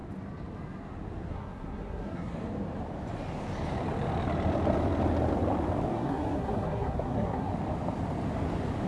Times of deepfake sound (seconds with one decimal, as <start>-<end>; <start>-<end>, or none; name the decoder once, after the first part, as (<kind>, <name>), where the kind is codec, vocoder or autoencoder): 1.3-2.3 (codec, SNAC); 5.9-7.5